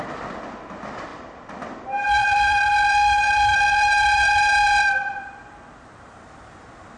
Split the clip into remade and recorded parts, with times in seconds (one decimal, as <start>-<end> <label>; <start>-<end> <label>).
0.0-1.1 recorded; 1.1-5.3 remade; 5.3-7.0 recorded